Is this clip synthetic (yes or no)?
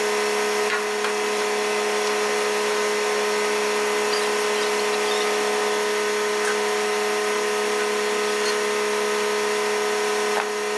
no